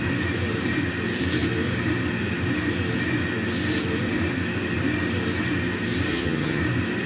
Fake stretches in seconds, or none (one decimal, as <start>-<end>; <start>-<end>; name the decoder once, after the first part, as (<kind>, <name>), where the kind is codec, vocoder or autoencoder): 6.1-6.6 (vocoder, HiFi-GAN)